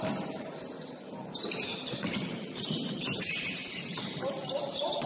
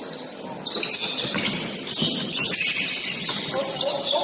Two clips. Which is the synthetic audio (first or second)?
first